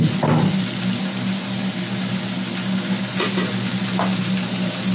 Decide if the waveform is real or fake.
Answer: real